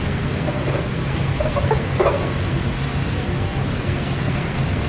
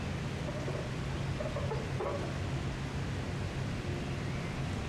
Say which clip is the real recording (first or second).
second